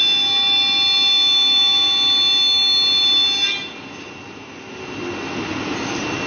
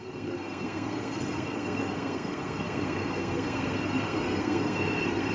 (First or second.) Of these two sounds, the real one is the first